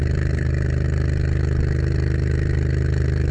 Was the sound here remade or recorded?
recorded